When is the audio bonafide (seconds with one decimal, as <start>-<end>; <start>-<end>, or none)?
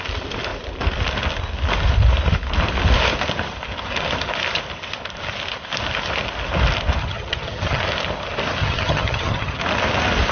0.0-7.0; 7.8-8.6; 9.6-10.3